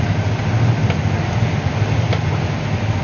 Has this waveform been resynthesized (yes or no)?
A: no